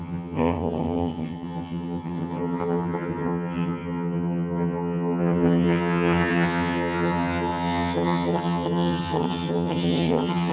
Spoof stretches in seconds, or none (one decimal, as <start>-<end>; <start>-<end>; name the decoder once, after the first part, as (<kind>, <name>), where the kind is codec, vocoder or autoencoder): 0.0-10.5 (vocoder, HiFi-GAN)